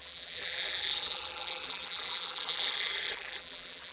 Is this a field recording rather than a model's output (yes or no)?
no